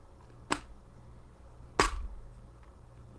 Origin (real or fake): real